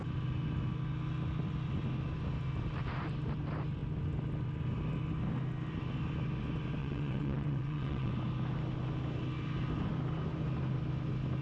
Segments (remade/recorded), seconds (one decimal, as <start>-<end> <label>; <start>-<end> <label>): 0.0-6.8 recorded; 6.8-8.1 remade; 8.1-11.4 recorded